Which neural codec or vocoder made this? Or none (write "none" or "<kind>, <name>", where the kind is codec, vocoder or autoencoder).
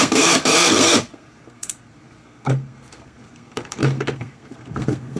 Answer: codec, SNAC